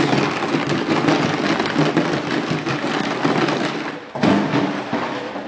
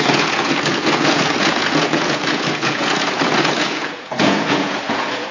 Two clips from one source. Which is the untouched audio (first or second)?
first